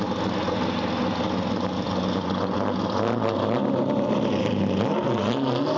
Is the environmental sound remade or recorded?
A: recorded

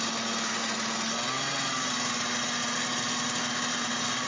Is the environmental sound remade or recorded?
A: recorded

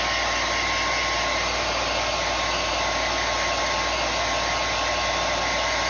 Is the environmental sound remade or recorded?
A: recorded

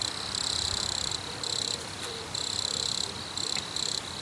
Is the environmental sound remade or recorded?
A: recorded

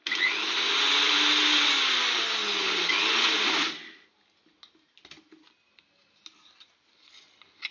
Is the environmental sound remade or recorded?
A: recorded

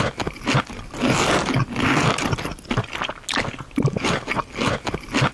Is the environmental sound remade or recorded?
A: recorded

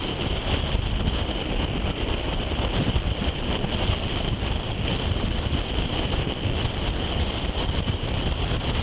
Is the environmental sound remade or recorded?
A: remade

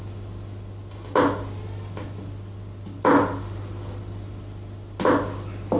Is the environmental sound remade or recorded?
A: recorded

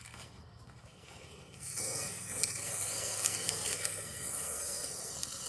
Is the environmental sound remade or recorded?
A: remade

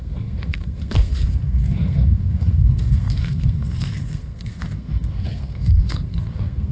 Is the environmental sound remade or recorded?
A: remade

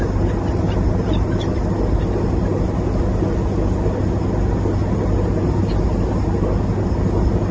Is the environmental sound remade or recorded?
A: recorded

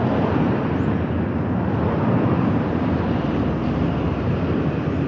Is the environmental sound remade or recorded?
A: recorded